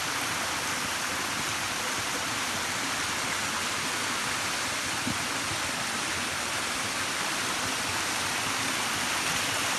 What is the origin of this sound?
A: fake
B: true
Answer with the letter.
B